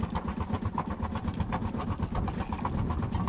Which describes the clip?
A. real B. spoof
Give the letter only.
A